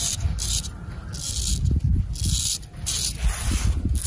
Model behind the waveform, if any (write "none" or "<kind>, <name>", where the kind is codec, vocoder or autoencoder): none